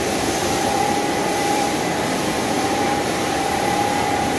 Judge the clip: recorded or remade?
remade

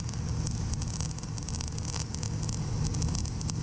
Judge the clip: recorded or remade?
recorded